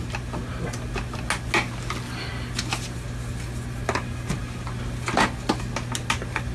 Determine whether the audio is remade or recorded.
recorded